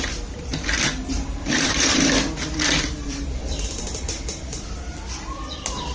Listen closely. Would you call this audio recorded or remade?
remade